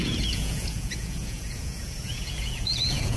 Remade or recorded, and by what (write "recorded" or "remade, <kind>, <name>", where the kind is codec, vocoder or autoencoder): remade, vocoder, Vocos